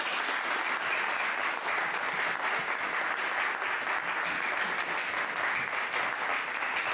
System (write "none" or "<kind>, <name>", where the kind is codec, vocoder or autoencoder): none